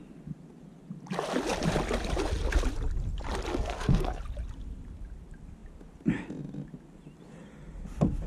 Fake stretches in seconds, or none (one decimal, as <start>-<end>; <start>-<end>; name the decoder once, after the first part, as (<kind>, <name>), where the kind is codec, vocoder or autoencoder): 3.5-4.2 (codec, SNAC)